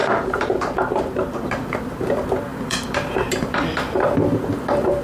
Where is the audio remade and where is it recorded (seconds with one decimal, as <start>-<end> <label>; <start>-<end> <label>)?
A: 0.0-1.8 remade; 1.8-2.5 recorded; 2.5-3.6 remade; 3.6-5.0 recorded